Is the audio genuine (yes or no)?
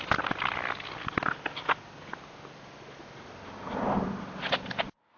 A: yes